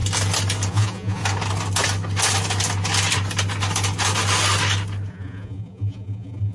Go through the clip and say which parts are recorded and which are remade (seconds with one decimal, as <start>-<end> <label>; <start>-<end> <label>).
0.0-0.7 recorded; 0.7-1.2 remade; 1.2-5.1 recorded; 5.1-6.5 remade